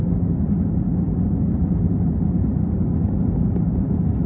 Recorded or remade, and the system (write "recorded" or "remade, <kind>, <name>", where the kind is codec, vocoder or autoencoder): recorded